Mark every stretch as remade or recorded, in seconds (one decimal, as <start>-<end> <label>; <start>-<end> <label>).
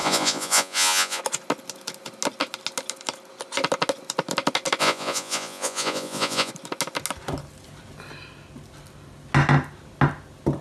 0.0-1.2 remade; 1.2-4.8 recorded; 4.8-6.5 remade; 6.5-10.6 recorded